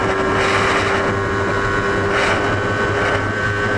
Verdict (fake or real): real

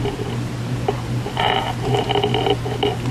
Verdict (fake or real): real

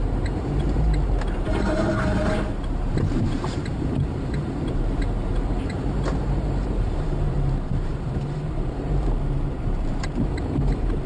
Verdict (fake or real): fake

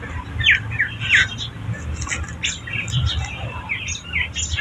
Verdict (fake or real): real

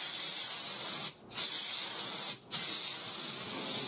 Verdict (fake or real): real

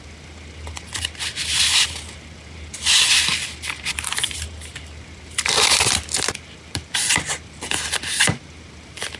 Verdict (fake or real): fake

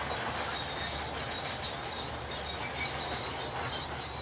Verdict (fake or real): real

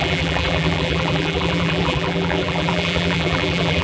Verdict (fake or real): fake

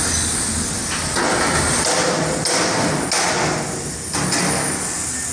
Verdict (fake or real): real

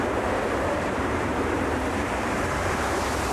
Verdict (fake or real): fake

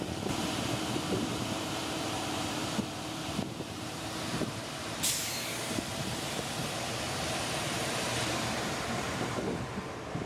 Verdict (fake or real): fake